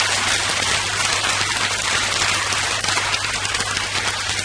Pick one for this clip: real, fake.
real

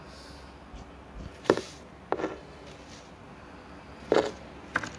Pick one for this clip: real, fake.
real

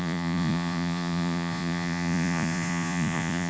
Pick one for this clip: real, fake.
fake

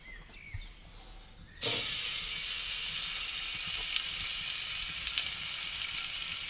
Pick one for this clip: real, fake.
real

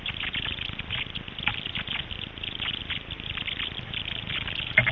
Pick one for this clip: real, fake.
fake